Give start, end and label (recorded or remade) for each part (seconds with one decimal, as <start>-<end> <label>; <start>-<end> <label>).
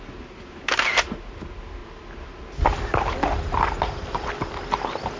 0.0-5.2 recorded